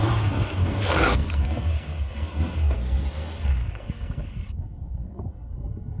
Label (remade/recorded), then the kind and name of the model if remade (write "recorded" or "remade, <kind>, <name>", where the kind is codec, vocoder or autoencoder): remade, codec, SNAC